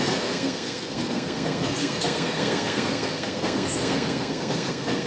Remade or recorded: remade